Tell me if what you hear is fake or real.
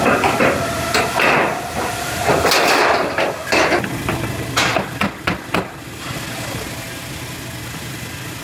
real